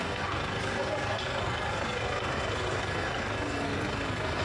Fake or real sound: fake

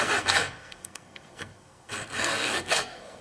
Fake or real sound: fake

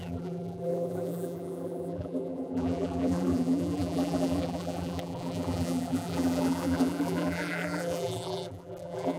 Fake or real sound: fake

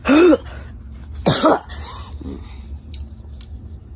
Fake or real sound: real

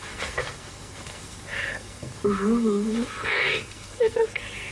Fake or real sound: fake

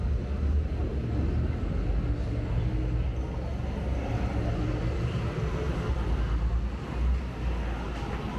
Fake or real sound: real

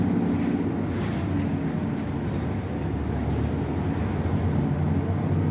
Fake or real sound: real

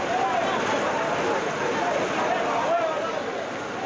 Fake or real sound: real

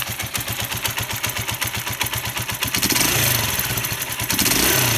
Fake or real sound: real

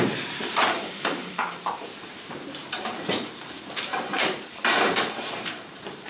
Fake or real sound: fake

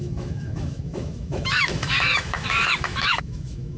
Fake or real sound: fake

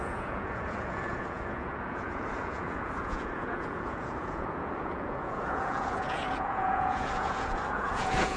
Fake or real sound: fake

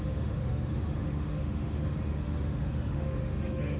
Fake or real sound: fake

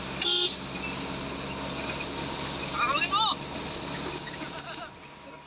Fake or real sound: real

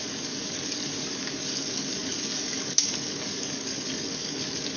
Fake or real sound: fake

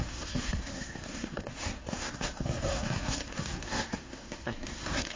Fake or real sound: fake